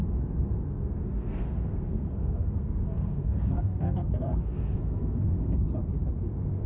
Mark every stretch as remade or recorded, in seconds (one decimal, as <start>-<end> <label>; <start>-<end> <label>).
0.0-5.8 remade; 5.8-6.3 recorded; 6.3-6.7 remade